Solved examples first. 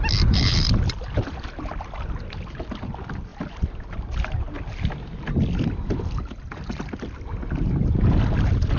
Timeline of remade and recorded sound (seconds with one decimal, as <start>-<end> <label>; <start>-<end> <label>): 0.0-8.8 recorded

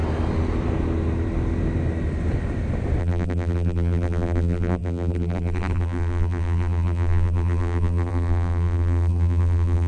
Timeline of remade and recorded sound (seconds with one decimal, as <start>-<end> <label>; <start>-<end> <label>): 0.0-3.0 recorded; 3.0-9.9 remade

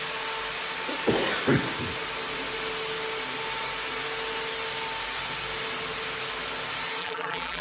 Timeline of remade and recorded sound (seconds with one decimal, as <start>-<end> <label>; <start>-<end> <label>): 0.0-7.0 recorded; 7.0-7.6 remade

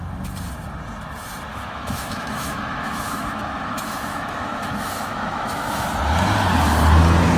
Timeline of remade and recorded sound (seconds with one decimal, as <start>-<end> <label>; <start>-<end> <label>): 0.0-1.5 recorded; 1.5-5.9 remade; 5.9-7.4 recorded

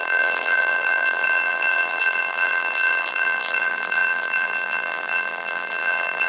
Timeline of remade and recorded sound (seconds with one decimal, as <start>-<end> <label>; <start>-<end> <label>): 0.0-6.3 remade

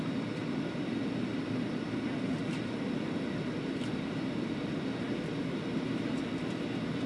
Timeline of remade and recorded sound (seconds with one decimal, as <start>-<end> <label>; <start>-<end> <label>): 0.0-1.3 recorded; 1.3-4.7 remade; 4.7-7.1 recorded